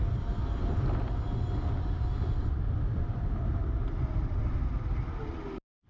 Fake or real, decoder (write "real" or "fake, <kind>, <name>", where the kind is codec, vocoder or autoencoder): real